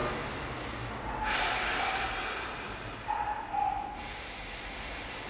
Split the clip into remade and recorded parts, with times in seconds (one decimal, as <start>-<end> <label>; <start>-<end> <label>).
0.0-5.3 recorded